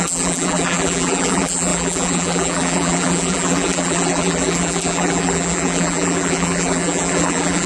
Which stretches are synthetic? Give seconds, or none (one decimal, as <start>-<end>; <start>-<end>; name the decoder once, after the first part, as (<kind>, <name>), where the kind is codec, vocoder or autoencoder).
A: 0.0-7.7 (vocoder, BigVGAN v2)